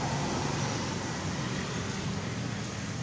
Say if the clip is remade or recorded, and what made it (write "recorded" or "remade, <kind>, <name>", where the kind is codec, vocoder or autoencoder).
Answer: recorded